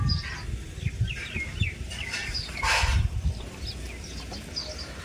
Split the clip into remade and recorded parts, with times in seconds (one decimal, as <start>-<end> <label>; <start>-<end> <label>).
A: 0.0-5.0 recorded